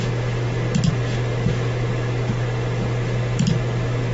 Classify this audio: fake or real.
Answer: real